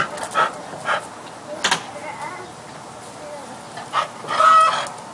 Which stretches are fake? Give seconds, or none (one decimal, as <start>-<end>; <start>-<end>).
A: none